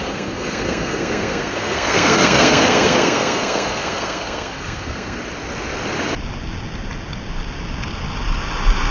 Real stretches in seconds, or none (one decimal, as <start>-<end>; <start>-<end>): 5.2-8.9